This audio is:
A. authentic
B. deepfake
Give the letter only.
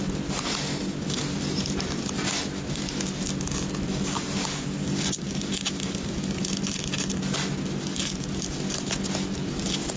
A